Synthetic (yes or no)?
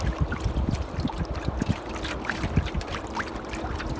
no